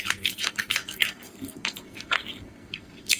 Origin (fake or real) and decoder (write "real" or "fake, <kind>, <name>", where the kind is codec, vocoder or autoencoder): fake, codec, SNAC